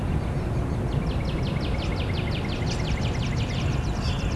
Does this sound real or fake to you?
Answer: real